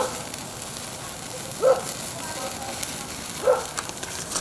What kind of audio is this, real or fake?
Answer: real